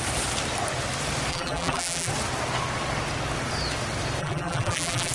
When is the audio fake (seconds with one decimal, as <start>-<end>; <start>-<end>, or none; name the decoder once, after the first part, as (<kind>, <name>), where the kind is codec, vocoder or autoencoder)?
1.3-2.1 (vocoder, BigVGAN v2); 4.2-5.1